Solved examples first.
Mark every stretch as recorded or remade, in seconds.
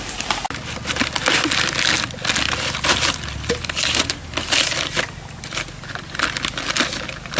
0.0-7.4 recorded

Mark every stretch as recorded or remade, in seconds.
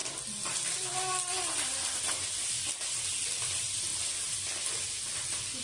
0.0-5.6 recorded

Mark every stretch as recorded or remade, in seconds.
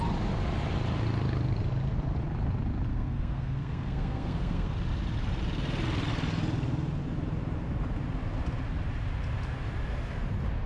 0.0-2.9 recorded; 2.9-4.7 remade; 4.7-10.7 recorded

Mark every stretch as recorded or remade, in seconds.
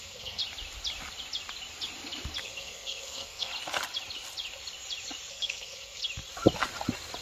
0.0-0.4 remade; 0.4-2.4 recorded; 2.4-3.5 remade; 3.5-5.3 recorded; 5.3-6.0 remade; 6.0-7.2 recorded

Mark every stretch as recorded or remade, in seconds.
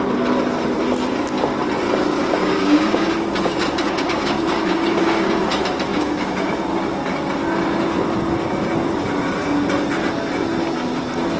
0.0-2.2 recorded; 2.2-5.5 remade; 5.5-5.9 recorded; 5.9-6.5 remade; 6.5-11.4 recorded